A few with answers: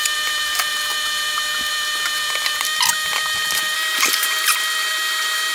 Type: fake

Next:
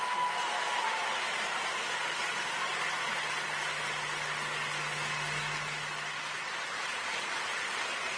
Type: real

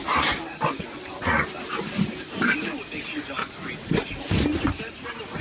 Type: real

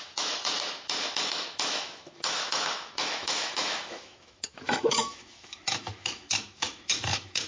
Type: fake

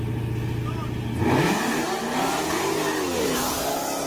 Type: real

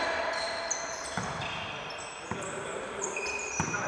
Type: real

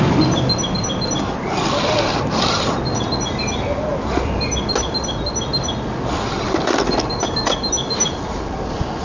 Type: real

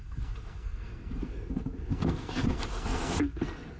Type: fake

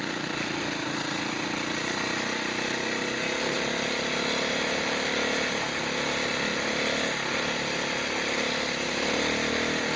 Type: real